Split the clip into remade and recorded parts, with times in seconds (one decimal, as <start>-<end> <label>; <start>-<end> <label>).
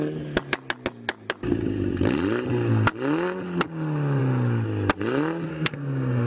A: 0.0-5.5 recorded; 5.5-6.3 remade